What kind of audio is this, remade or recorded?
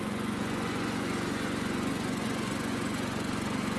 remade